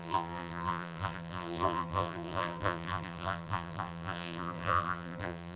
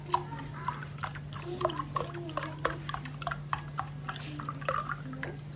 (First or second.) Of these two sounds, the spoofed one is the first